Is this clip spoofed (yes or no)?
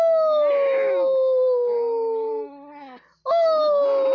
no